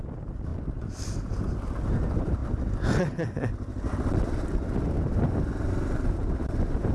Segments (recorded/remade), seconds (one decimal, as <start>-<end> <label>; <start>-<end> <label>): 0.0-0.5 remade; 0.5-1.8 recorded; 1.8-6.9 remade